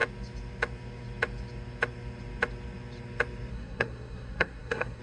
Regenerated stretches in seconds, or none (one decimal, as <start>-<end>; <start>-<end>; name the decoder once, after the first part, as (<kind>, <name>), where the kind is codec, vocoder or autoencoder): 3.5-5.0 (codec, SNAC)